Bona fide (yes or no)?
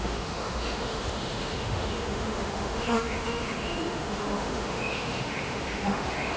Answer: no